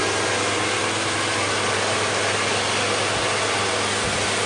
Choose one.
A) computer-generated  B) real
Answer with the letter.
B